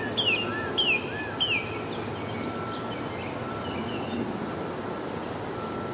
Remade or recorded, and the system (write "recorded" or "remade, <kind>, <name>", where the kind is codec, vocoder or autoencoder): recorded